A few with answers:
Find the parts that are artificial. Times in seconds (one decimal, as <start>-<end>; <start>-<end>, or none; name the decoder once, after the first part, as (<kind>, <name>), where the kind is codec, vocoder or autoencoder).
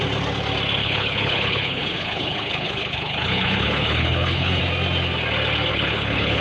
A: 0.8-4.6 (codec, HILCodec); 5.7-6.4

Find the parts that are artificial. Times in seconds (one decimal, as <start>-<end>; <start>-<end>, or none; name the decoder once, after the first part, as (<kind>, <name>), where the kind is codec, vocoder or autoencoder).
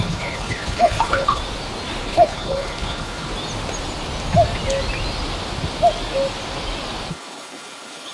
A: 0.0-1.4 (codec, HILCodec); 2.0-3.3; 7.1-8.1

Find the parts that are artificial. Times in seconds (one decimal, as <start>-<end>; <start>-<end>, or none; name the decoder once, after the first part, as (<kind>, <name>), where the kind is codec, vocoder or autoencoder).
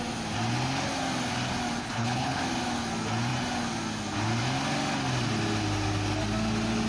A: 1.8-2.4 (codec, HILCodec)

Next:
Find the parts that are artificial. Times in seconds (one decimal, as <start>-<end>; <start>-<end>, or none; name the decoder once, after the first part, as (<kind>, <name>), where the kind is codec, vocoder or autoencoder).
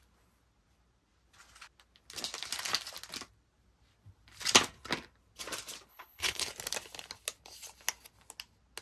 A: 5.9-6.5 (codec, HILCodec)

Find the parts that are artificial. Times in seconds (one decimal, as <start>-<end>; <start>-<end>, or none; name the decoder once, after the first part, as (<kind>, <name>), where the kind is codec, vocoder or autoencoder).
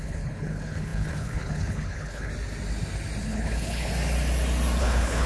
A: 0.0-2.3 (codec, HILCodec); 3.2-3.9; 4.8-5.3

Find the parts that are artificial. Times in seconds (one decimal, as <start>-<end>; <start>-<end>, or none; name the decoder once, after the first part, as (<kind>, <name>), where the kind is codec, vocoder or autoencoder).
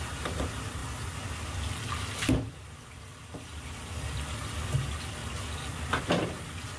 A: none